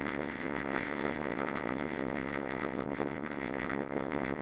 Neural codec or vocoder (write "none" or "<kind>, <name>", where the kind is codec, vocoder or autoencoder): vocoder, WaveNeXt